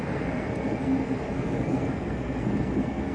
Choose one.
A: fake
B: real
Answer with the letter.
A